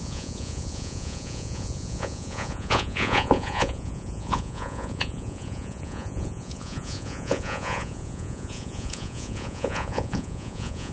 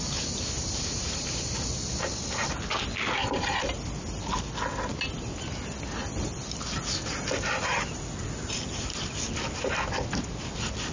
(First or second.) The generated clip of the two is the first